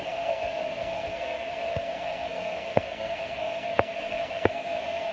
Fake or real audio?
fake